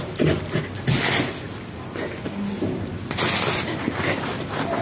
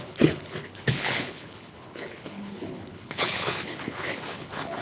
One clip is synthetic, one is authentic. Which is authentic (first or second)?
first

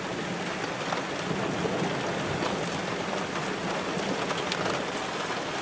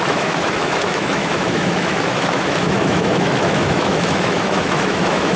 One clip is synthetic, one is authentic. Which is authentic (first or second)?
first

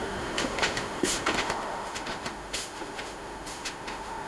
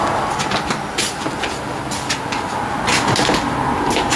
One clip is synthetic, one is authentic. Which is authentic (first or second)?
second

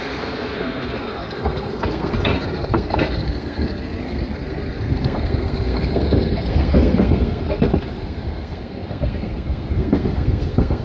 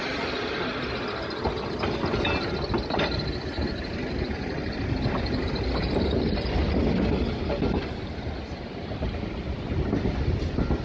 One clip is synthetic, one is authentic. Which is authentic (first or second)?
second